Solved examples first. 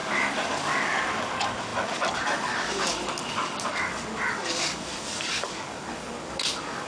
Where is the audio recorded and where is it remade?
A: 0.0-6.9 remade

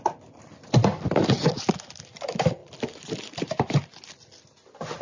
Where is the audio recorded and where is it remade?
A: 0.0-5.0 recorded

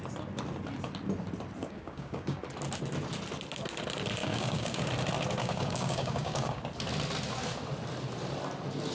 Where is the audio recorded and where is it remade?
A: 0.0-1.6 recorded; 1.6-2.4 remade; 2.4-4.2 recorded; 4.2-4.9 remade; 4.9-5.4 recorded; 5.4-6.6 remade; 6.6-8.9 recorded

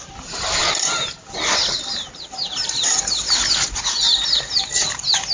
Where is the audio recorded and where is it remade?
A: 0.0-5.3 recorded